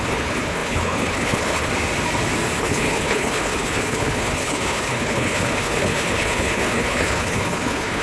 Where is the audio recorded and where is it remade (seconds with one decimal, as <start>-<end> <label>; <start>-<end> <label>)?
0.0-1.7 remade; 1.7-2.6 recorded; 2.6-8.0 remade